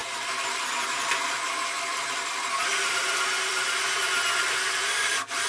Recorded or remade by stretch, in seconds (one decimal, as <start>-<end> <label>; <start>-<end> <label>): 0.0-5.5 recorded